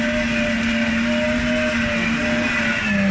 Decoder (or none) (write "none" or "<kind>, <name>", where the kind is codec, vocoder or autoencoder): none